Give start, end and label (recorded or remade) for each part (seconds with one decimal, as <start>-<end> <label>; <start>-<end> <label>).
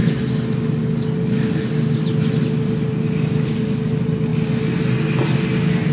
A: 0.0-5.9 recorded